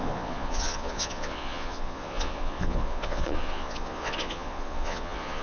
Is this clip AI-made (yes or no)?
yes